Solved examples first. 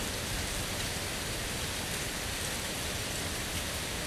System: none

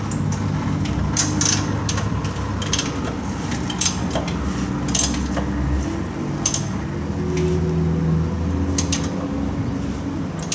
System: none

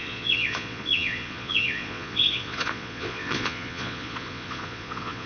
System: vocoder, Vocos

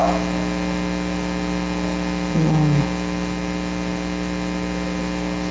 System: none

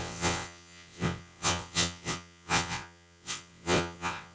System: vocoder, WaveNeXt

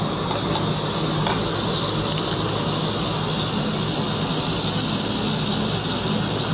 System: none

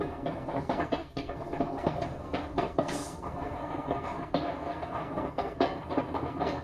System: codec, SNAC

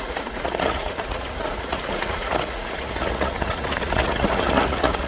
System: vocoder, Vocos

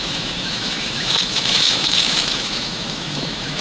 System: autoencoder, DAC-VAE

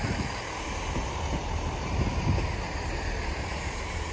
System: none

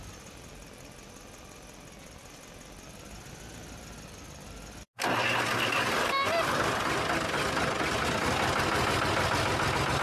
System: none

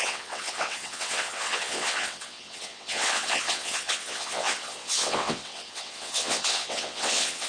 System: vocoder, WaveNeXt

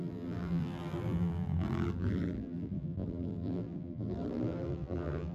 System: vocoder, BigVGAN v2